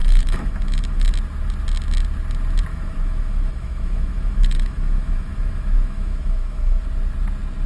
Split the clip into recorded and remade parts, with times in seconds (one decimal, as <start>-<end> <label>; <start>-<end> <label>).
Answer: 0.0-1.1 remade; 1.1-2.7 recorded; 2.7-6.8 remade; 6.8-7.7 recorded